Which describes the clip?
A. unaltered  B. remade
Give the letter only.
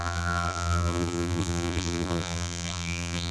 B